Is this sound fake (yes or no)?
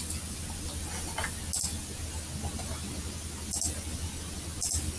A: no